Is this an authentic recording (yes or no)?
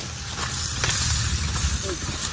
yes